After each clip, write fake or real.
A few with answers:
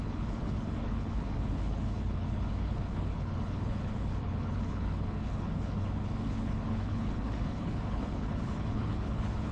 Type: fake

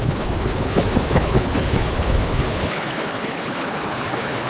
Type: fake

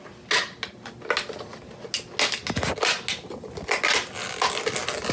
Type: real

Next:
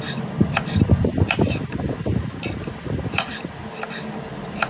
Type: real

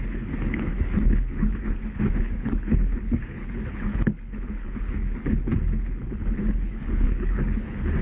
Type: fake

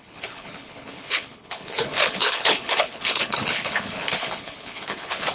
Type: fake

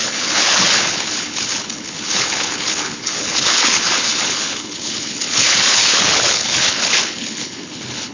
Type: fake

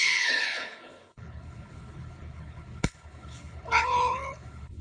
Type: fake